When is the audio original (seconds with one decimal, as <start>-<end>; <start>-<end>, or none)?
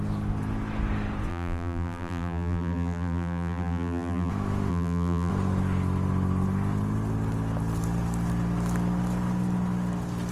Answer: 0.0-1.3; 4.3-4.7; 5.3-10.3